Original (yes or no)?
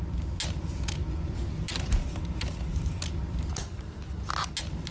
yes